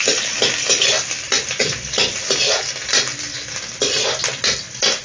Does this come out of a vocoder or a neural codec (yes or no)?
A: no